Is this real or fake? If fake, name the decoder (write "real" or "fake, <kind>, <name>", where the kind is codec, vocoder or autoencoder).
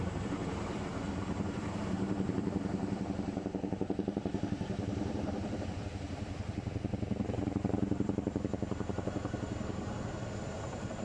fake, vocoder, BigVGAN v2